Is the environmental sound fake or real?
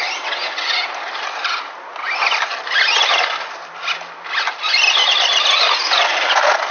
real